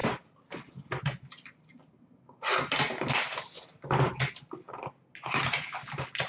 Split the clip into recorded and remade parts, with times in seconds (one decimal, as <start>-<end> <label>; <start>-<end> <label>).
0.0-6.3 recorded